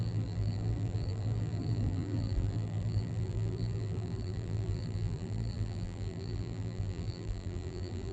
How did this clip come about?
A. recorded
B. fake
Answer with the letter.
B